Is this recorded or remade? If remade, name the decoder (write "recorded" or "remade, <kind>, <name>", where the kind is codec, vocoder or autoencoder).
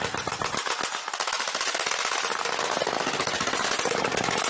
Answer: recorded